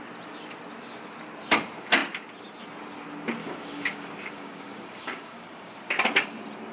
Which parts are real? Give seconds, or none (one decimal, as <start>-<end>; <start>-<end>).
0.0-3.4; 5.7-6.7